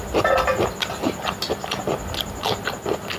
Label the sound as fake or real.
real